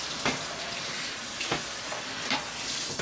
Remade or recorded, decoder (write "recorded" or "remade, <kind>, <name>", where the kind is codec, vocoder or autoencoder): recorded